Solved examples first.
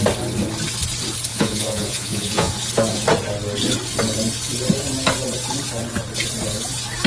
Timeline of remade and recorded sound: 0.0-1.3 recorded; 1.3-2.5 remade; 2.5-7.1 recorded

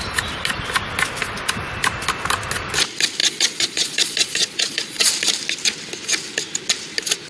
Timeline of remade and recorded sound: 0.0-3.2 recorded; 3.2-5.1 remade; 5.1-7.3 recorded

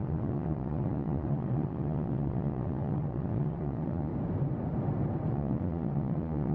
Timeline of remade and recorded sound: 0.0-4.1 remade; 4.1-5.3 recorded; 5.3-6.5 remade

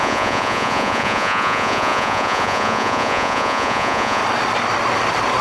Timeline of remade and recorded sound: 0.0-4.2 remade; 4.2-5.4 recorded

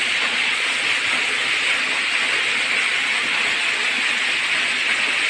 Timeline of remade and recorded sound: 0.0-0.7 remade; 0.7-5.3 recorded

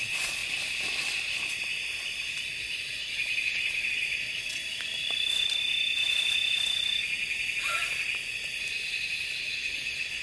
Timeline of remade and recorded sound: 0.0-0.4 remade; 0.4-3.0 recorded; 3.0-4.6 remade; 4.6-9.4 recorded; 9.4-10.2 remade

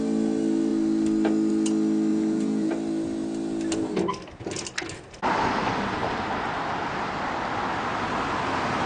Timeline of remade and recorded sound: 0.0-2.1 recorded; 2.1-2.7 remade; 2.7-8.9 recorded

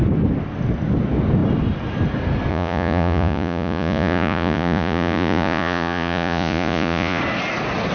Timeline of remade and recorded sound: 0.0-2.5 recorded; 2.5-7.2 remade; 7.2-7.9 recorded